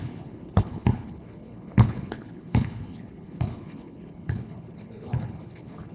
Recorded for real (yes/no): no